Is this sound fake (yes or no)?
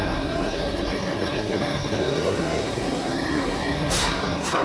yes